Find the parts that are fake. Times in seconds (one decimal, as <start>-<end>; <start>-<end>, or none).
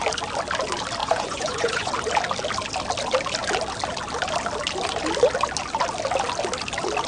1.0-1.9